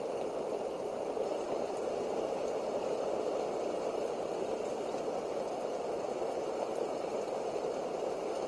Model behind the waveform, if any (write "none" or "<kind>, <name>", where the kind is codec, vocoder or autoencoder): vocoder, BigVGAN v2